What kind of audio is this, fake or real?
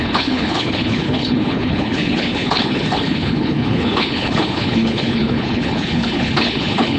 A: fake